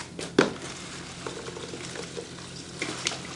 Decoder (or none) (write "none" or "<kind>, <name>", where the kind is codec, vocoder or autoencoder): none